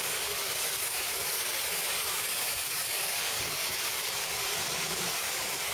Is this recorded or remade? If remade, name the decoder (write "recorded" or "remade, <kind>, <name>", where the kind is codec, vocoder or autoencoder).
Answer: remade, codec, DAC